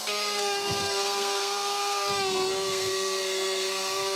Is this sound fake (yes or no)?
yes